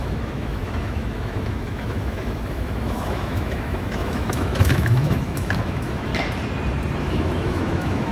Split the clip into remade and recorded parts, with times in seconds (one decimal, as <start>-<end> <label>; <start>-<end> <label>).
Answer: 0.0-6.1 remade; 6.1-7.0 recorded; 7.0-8.1 remade